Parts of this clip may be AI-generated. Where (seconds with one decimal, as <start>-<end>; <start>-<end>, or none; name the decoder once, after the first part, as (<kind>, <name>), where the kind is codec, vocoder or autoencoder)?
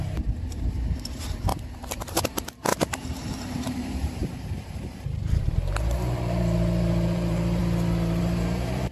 0.0-1.5 (vocoder, BigVGAN v2); 2.1-7.6; 8.2-8.9